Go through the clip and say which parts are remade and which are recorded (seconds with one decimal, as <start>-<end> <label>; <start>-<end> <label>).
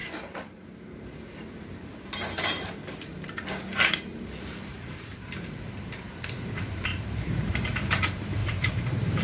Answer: 0.0-4.4 recorded; 4.4-9.2 remade